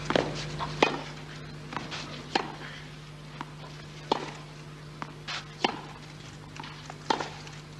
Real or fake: real